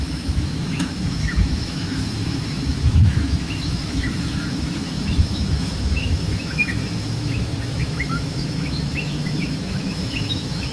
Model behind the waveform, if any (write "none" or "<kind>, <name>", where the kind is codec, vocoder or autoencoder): autoencoder, DAC-VAE